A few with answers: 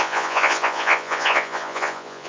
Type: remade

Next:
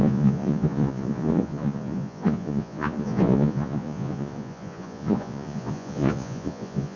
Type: remade